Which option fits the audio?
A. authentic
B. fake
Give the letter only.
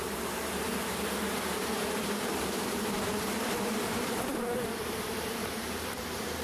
B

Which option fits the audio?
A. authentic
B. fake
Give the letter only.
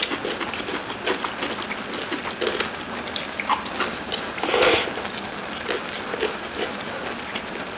A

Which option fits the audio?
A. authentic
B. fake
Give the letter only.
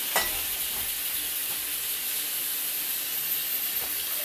A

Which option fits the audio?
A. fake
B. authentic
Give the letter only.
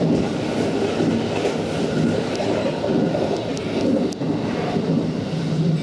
B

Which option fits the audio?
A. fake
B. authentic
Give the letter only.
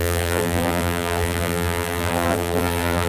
A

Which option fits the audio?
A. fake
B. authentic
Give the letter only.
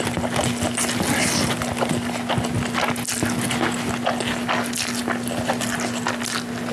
B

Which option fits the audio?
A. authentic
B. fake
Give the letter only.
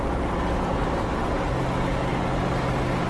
A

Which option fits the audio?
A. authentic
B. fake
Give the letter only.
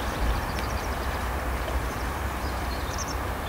B